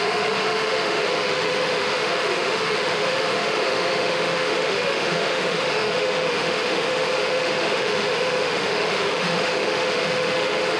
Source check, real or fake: fake